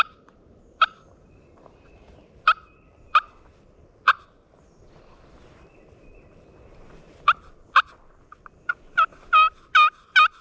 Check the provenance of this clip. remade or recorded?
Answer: recorded